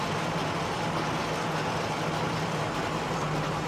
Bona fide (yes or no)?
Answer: yes